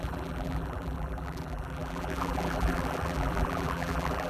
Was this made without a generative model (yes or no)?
no